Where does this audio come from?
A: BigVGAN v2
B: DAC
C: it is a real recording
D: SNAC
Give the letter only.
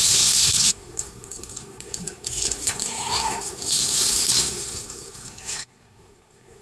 D